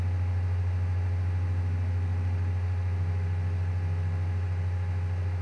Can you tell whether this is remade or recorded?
recorded